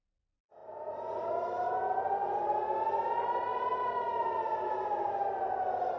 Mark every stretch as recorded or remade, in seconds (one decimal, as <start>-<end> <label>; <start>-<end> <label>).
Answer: 0.0-6.0 recorded